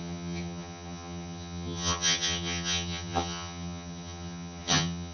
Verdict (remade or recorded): remade